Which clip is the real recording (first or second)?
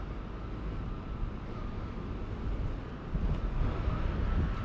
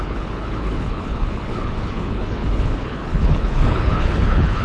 first